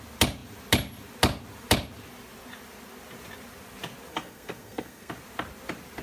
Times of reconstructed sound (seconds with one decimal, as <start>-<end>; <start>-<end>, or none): 4.1-5.1